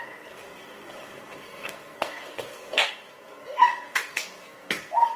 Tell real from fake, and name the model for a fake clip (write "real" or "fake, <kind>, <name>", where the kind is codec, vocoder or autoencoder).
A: fake, codec, SNAC